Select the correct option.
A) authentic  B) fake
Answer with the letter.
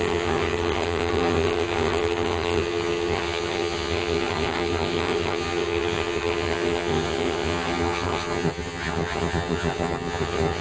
B